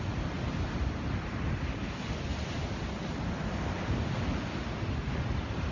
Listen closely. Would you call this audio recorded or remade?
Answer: recorded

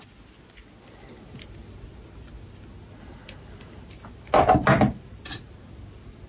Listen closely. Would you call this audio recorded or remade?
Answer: recorded